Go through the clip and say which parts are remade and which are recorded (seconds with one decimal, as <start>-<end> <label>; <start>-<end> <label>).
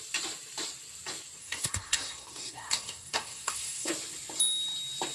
0.0-1.4 recorded; 1.4-3.9 remade; 3.9-5.1 recorded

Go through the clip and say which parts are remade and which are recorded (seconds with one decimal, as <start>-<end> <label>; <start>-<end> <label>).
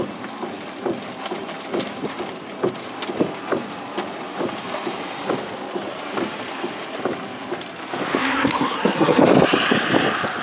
0.0-8.2 recorded; 8.2-9.2 remade; 9.2-10.4 recorded